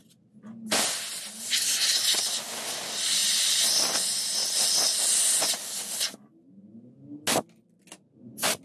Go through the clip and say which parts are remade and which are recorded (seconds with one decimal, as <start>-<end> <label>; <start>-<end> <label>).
0.0-8.6 recorded